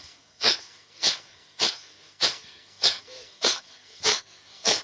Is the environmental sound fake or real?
fake